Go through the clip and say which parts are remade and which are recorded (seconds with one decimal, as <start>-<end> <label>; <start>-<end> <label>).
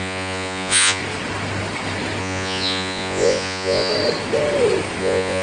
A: 0.0-1.0 remade; 1.0-2.2 recorded; 2.2-3.9 remade; 3.9-5.0 recorded; 5.0-5.4 remade